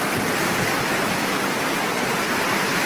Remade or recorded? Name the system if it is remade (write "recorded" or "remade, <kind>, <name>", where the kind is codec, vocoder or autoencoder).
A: remade, vocoder, BigVGAN v2